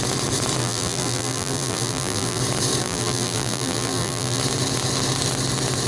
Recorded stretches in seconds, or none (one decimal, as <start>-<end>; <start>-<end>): 0.0-0.6; 2.4-2.8; 4.4-5.9